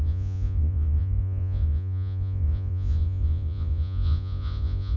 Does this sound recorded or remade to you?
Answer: remade